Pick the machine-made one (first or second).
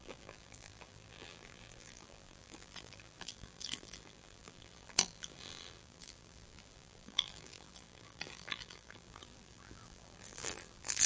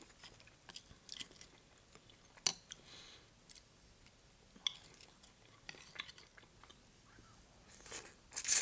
first